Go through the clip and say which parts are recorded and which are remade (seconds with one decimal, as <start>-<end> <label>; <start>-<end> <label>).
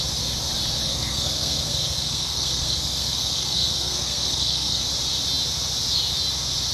0.0-0.8 recorded; 0.8-4.8 remade; 4.8-6.7 recorded